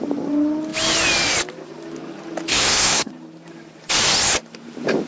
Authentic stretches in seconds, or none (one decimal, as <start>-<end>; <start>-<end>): 0.0-2.5; 3.1-5.1